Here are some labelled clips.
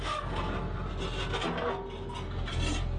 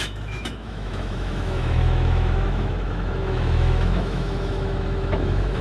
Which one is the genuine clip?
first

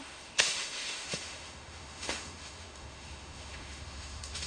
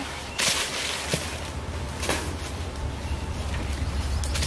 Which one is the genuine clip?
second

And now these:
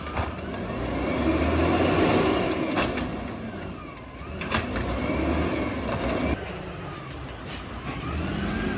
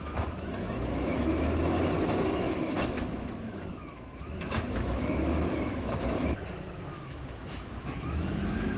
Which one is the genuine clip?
first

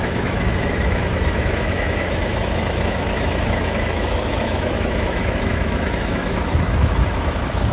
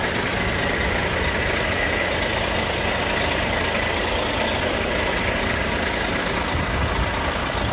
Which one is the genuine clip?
second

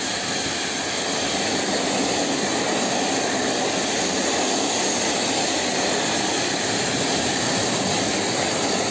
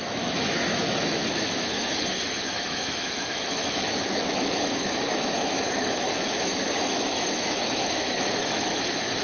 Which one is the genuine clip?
first